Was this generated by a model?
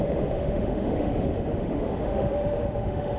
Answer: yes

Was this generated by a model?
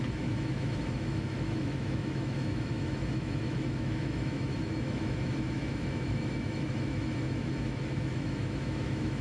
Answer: yes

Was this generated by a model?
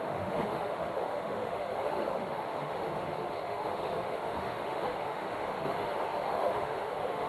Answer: yes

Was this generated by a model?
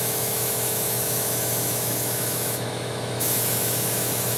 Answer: yes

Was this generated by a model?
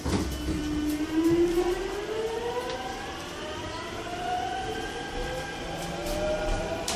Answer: no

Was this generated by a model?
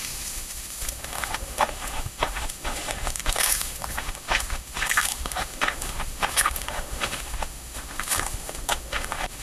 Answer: yes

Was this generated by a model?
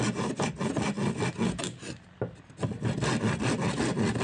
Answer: no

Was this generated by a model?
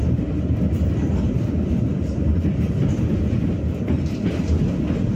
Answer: no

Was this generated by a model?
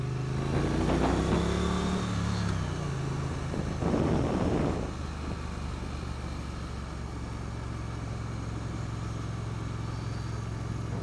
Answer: no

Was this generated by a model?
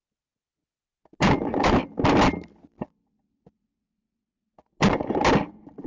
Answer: no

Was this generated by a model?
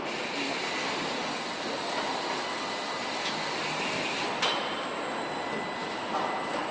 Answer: no